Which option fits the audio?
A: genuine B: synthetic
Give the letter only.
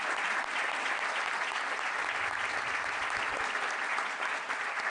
B